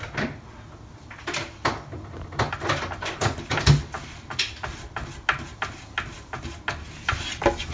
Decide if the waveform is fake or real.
real